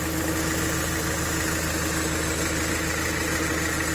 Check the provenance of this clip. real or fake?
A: real